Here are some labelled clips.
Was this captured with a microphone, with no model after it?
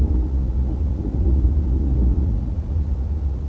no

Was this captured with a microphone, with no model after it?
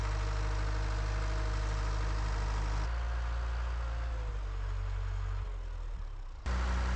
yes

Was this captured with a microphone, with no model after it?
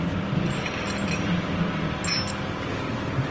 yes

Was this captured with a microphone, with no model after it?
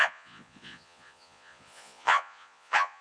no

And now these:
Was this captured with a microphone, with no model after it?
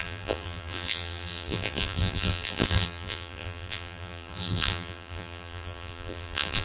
no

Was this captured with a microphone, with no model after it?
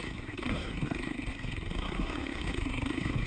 no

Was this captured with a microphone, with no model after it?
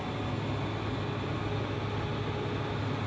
yes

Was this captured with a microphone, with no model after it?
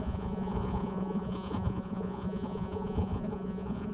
no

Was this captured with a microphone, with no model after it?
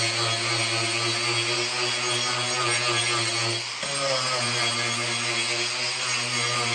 yes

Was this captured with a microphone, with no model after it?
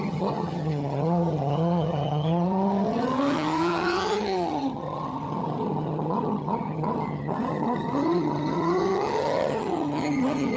no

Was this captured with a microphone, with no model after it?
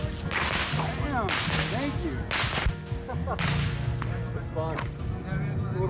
yes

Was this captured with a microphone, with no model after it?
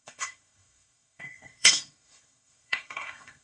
no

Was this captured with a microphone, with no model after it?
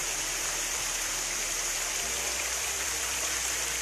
no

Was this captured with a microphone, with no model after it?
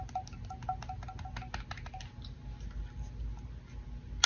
yes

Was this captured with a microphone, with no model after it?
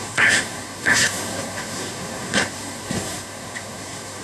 no